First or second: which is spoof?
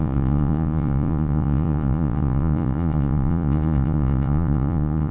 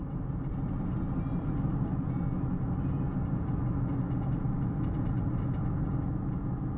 first